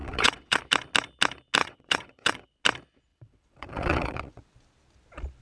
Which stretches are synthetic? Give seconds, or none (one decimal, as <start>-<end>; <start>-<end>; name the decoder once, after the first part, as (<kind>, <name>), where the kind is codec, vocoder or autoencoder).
0.0-0.6 (vocoder, WaveNeXt); 1.6-2.5; 3.1-4.4